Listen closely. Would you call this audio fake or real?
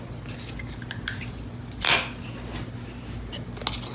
real